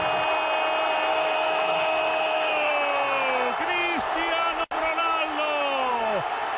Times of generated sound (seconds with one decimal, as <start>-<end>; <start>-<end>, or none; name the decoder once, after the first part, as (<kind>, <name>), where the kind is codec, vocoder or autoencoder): 1.1-2.7 (autoencoder, DAC-VAE)